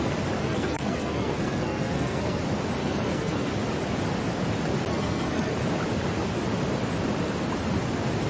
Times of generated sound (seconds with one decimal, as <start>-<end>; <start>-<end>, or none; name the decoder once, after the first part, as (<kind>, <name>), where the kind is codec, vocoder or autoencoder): 0.4-2.4 (codec, SNAC); 2.8-3.5; 4.9-5.5